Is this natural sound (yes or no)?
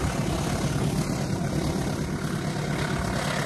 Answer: yes